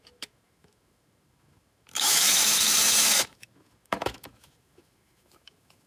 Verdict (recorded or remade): remade